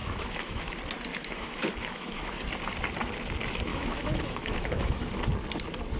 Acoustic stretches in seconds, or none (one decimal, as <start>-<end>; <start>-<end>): 0.6-1.1; 2.4-3.7; 5.1-6.0